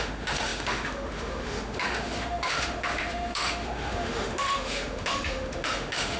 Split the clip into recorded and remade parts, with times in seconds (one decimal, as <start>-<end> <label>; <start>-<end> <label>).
0.0-6.2 remade